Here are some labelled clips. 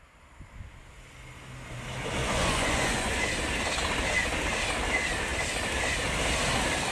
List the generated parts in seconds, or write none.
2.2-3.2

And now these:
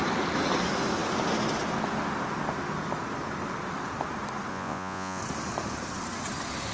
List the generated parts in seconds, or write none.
4.5-5.2

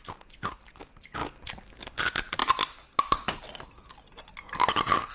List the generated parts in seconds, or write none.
none

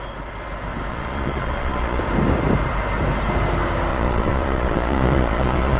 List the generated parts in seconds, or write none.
0.9-2.0; 3.9-5.8

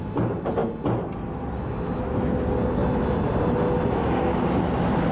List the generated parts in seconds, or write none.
none

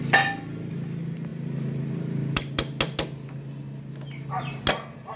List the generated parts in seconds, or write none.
none